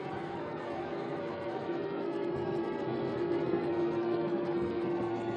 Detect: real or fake fake